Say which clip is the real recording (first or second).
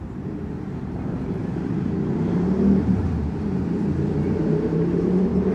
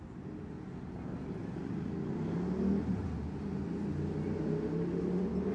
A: second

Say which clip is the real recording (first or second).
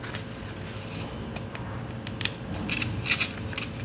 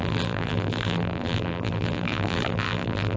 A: first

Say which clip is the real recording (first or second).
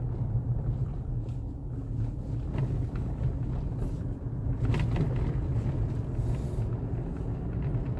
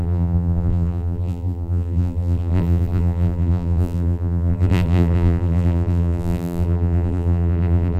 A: first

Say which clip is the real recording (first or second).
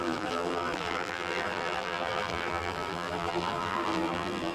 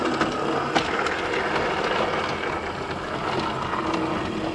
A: second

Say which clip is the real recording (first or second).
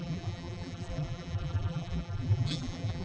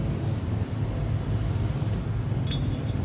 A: second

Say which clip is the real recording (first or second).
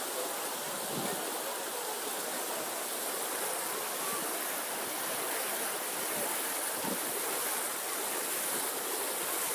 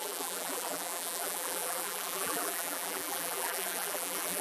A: first